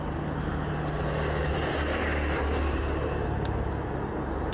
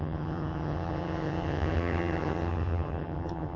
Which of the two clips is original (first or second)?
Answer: first